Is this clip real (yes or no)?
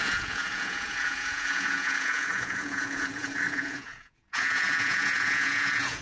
no